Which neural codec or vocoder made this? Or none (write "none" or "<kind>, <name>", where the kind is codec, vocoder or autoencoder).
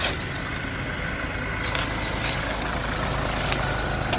none